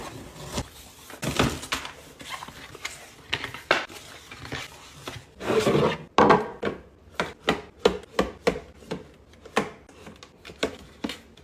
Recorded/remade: recorded